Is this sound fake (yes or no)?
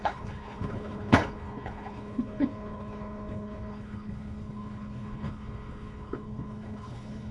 yes